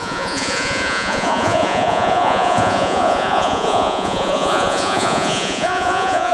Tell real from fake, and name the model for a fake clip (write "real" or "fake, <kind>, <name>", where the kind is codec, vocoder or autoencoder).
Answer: fake, vocoder, Vocos